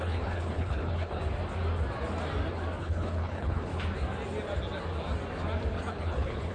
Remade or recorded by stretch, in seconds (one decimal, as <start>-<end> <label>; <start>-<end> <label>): 0.0-1.2 remade; 1.2-2.8 recorded; 2.8-3.7 remade; 3.7-5.9 recorded; 5.9-6.5 remade